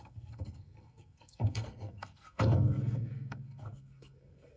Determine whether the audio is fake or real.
fake